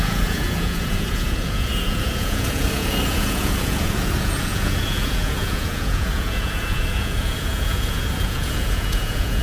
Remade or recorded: remade